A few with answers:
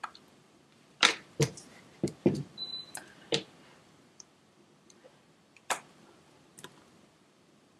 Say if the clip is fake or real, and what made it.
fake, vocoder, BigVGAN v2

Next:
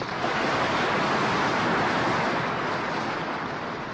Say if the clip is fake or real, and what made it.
real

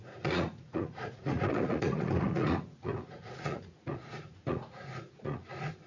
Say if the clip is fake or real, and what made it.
fake, vocoder, Vocos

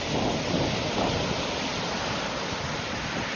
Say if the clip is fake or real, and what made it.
real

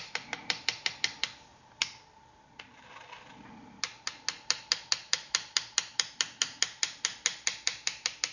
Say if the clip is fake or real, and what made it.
real